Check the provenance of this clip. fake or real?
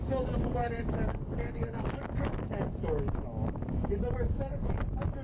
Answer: fake